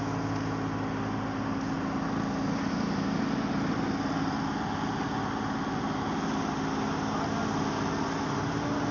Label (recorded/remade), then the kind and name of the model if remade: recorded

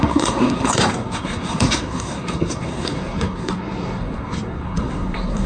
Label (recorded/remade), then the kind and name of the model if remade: remade, codec, SNAC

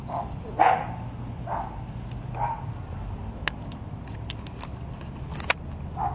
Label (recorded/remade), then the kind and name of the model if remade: recorded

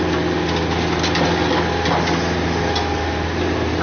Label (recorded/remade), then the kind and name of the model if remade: recorded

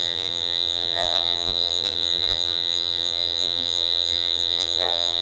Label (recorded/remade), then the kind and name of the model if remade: remade, vocoder, BigVGAN v2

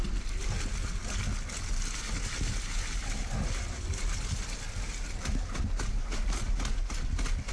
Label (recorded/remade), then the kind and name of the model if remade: recorded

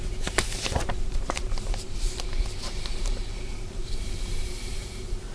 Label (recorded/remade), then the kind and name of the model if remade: remade, vocoder, BigVGAN v2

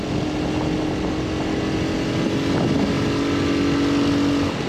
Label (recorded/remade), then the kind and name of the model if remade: recorded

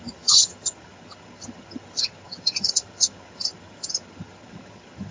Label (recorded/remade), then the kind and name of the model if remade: remade, vocoder, HiFi-GAN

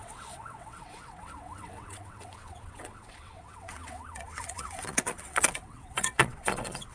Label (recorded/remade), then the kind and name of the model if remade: remade, vocoder, WaveNeXt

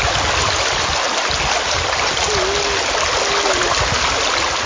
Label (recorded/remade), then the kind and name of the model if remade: recorded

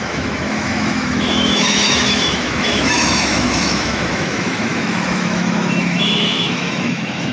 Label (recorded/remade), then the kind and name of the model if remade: remade, autoencoder, DAC-VAE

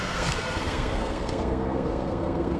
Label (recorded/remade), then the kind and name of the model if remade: remade, codec, SNAC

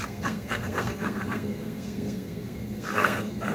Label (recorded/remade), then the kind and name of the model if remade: remade, codec, SNAC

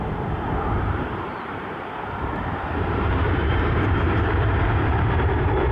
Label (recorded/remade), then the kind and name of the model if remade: remade, vocoder, BigVGAN v2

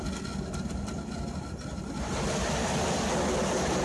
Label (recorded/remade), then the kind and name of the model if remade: recorded